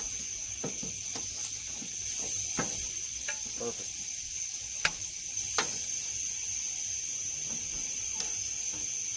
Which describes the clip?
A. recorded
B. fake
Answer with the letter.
A